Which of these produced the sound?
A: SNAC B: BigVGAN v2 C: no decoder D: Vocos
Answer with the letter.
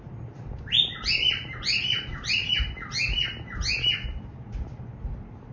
C